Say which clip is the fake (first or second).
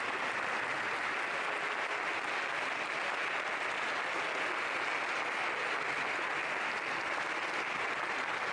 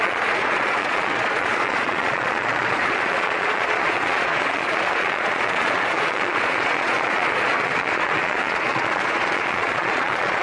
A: second